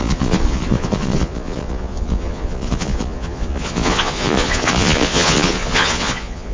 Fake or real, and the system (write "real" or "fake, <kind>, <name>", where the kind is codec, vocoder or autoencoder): fake, vocoder, Vocos